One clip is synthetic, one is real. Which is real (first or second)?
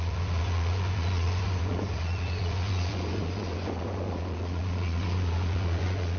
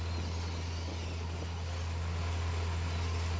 second